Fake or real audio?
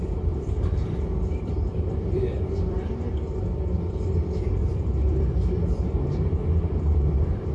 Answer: fake